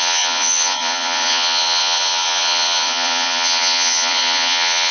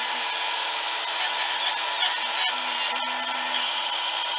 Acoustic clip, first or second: second